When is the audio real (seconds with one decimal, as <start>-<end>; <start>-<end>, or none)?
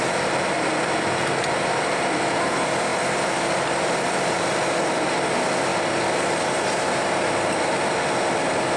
0.0-8.8